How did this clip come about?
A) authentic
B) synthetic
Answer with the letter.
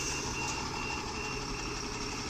A